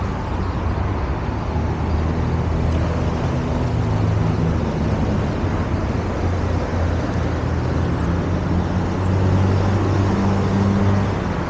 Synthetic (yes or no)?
no